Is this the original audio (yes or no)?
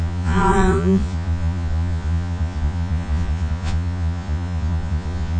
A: no